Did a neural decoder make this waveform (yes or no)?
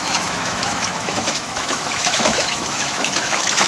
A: yes